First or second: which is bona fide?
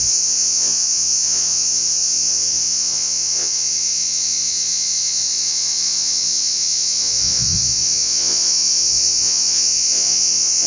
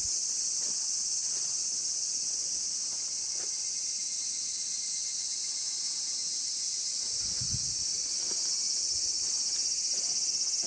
second